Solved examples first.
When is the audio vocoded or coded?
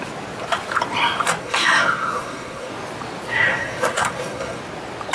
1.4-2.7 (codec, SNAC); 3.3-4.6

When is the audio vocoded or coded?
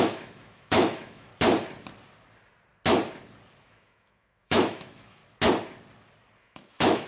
0.0-1.3 (autoencoder, DAC-VAE); 3.6-5.2; 6.4-7.1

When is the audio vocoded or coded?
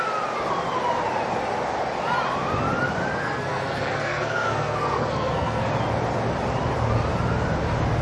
3.2-5.7 (codec, SNAC)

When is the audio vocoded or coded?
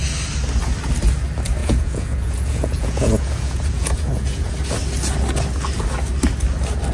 1.6-4.5 (vocoder, Vocos)